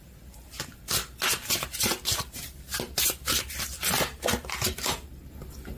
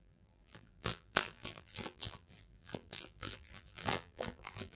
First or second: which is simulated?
second